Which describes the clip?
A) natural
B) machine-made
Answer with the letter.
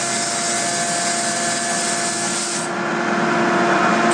A